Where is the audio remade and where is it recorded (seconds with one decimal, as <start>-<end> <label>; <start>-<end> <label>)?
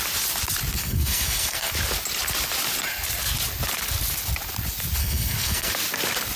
0.0-0.8 recorded; 0.8-1.7 remade; 1.7-5.0 recorded; 5.0-5.7 remade; 5.7-6.4 recorded